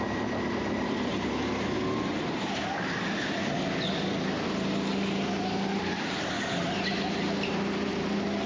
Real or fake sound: real